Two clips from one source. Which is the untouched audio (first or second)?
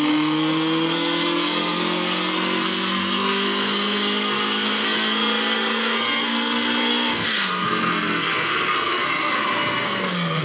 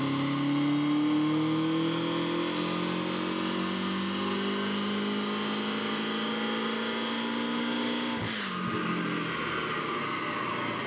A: second